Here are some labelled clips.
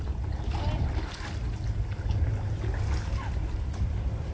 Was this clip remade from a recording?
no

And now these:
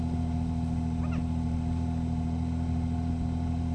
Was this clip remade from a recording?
no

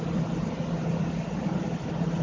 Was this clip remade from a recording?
no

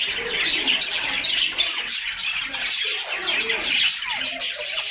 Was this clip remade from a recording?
no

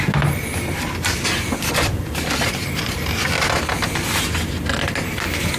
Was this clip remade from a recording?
no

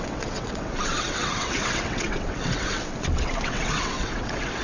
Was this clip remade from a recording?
yes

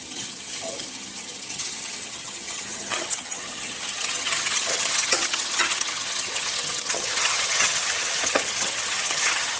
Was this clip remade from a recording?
yes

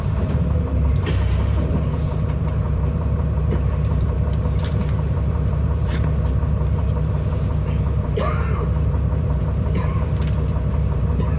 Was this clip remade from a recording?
yes